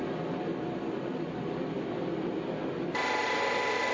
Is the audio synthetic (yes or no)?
no